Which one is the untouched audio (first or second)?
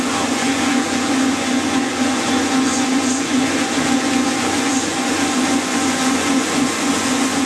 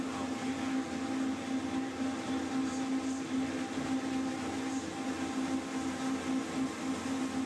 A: second